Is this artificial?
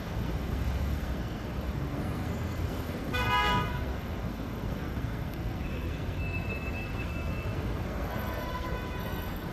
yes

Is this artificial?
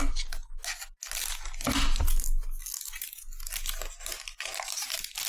no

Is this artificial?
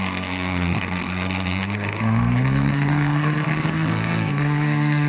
yes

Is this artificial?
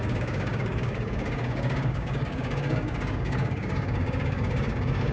yes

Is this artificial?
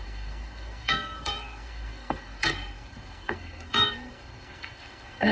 yes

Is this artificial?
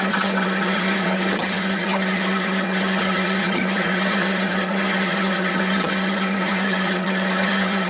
yes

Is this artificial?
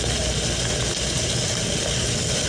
no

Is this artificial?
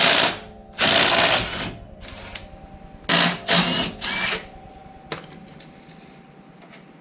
no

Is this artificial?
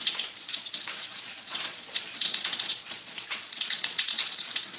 yes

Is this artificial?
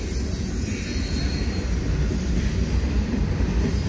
no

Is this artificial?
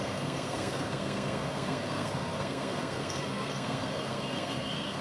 yes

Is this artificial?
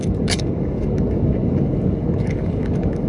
yes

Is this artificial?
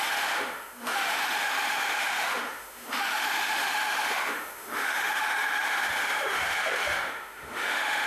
yes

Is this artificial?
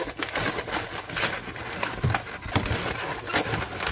yes